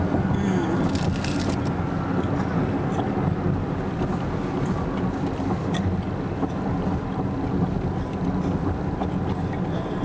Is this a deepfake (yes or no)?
no